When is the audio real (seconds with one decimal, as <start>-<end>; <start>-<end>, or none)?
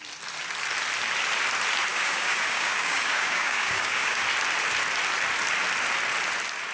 0.0-1.9; 4.2-6.7